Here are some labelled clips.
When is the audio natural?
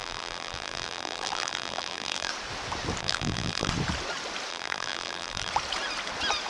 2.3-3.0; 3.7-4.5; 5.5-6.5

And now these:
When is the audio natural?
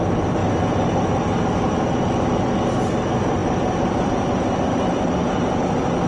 0.4-1.4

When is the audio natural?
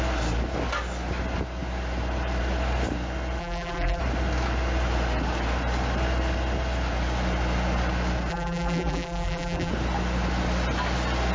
0.0-3.4; 4.0-8.3; 9.7-11.3